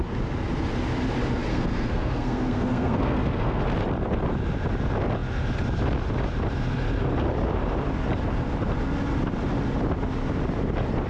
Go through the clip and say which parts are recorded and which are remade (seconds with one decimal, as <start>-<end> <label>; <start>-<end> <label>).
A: 0.0-1.5 recorded; 1.5-3.6 remade; 3.6-11.1 recorded